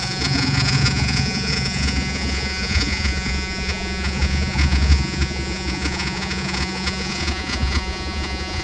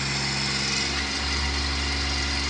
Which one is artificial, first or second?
first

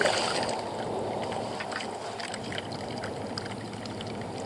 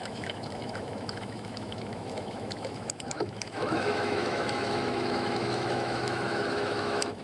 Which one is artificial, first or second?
second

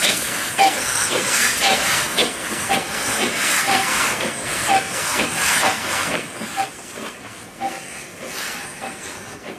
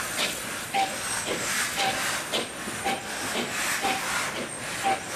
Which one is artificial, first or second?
first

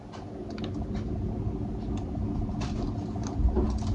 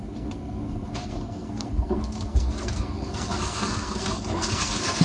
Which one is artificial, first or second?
second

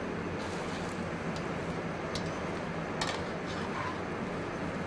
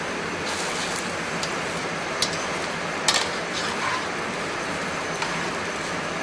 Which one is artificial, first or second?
second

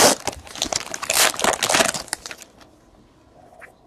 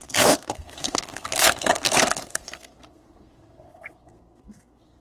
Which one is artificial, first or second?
second